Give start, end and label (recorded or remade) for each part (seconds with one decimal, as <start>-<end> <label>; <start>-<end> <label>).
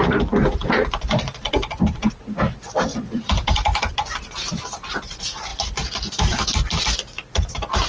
0.0-0.6 recorded; 0.6-2.0 remade; 2.0-2.9 recorded; 2.9-3.9 remade; 3.9-5.5 recorded; 5.5-6.4 remade; 6.4-7.9 recorded